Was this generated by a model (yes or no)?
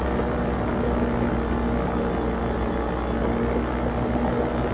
no